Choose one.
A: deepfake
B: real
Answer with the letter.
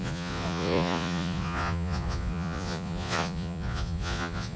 A